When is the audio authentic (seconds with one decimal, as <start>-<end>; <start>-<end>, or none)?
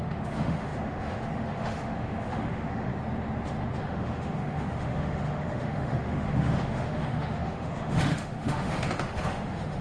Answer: 2.9-3.8